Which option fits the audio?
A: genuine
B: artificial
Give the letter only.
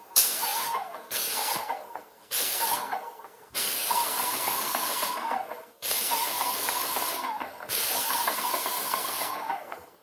B